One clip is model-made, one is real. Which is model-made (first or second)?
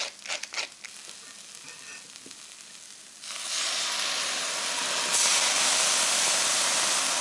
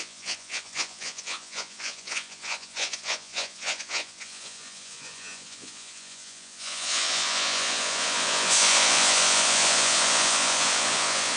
second